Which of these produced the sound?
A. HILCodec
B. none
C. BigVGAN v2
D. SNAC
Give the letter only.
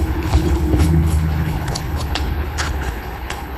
A